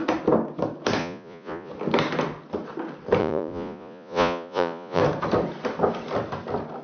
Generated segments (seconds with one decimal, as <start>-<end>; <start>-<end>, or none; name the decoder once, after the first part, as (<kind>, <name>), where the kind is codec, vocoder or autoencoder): 1.0-1.7 (vocoder, Vocos); 3.2-5.0